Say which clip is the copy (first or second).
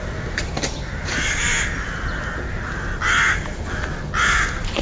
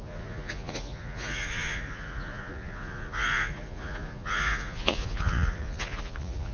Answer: second